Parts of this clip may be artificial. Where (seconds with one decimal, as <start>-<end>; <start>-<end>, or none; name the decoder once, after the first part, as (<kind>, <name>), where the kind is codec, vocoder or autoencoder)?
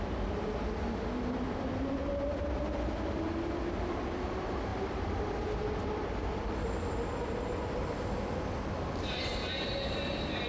none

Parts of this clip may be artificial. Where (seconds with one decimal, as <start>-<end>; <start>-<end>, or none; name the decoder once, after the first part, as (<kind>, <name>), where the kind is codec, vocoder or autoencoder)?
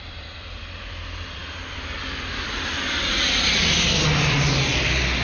none